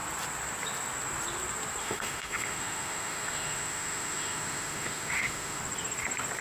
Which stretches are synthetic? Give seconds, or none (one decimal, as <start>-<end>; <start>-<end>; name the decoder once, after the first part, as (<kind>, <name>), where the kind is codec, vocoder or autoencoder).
1.8-5.6 (autoencoder, DAC-VAE)